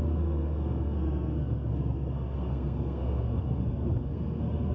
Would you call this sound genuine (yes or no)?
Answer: no